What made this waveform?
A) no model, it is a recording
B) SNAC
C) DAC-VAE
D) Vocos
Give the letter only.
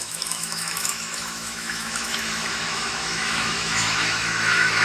C